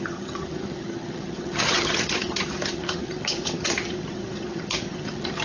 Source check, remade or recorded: remade